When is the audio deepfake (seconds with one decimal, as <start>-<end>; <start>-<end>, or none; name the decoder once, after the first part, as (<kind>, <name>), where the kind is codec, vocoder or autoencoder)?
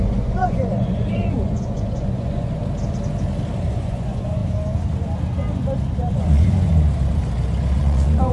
0.0-2.6 (vocoder, Vocos); 3.7-4.4; 6.1-6.7; 7.8-8.3